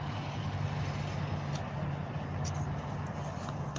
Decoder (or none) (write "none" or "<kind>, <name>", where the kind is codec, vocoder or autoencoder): none